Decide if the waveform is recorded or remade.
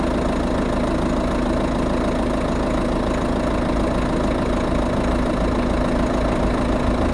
recorded